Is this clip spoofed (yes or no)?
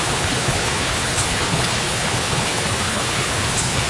yes